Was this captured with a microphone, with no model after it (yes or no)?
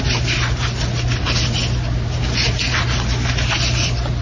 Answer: yes